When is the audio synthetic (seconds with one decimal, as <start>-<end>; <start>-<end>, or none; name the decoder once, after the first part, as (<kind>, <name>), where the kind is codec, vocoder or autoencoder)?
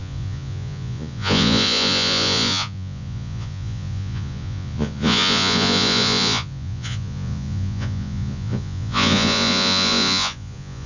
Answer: 0.0-10.9 (vocoder, Vocos)